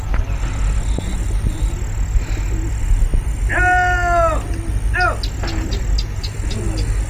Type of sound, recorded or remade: recorded